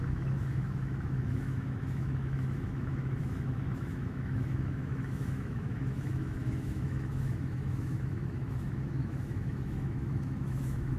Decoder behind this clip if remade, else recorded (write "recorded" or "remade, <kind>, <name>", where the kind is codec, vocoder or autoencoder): remade, autoencoder, DAC-VAE